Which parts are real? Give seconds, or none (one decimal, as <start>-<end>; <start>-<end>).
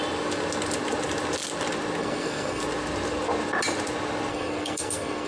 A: 0.0-2.0; 2.6-4.3